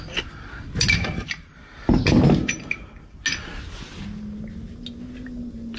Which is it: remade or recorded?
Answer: recorded